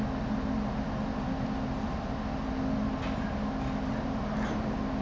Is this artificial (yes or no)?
no